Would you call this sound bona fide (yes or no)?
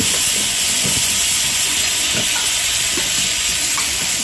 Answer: no